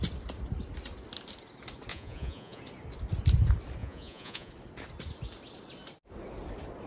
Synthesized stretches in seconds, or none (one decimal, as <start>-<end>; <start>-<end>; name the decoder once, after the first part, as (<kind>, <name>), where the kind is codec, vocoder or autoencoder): 1.9-2.6 (vocoder, Vocos); 3.8-4.5